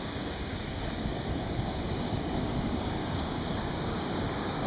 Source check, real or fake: fake